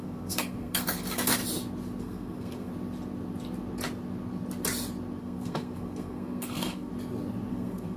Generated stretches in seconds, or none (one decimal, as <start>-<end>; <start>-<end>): 0.0-1.4; 2.0-2.7; 5.2-6.9; 7.5-8.0